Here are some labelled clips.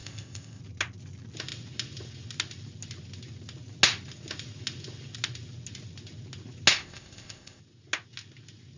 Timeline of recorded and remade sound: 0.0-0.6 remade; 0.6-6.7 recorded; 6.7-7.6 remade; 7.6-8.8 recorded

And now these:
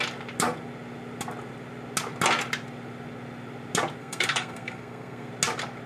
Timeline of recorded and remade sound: 0.0-4.0 recorded; 4.0-5.3 remade; 5.3-5.9 recorded

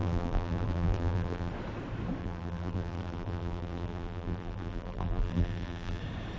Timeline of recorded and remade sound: 0.0-1.5 remade; 1.5-2.2 recorded; 2.2-6.0 remade; 6.0-6.4 recorded

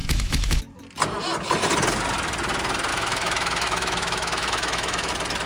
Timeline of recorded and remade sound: 0.0-0.6 remade; 0.6-2.9 recorded; 2.9-5.1 remade; 5.1-5.5 recorded

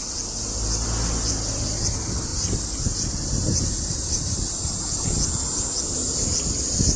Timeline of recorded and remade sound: 0.0-2.3 recorded; 2.3-4.7 remade; 4.7-7.0 recorded

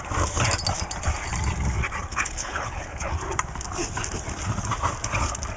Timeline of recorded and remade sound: 0.0-2.1 recorded; 2.1-3.1 remade; 3.1-5.6 recorded